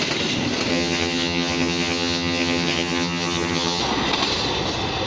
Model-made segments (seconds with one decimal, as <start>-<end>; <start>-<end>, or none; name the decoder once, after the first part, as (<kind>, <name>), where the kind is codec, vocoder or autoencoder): 0.7-3.8 (vocoder, HiFi-GAN)